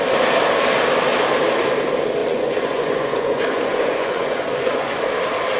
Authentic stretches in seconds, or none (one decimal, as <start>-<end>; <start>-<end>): 0.0-2.2; 5.0-5.6